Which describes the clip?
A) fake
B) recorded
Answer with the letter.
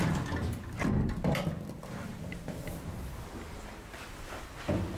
B